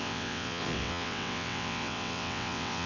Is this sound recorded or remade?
remade